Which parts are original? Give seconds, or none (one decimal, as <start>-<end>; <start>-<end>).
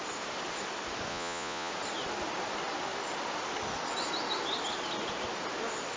0.0-1.1; 1.7-6.0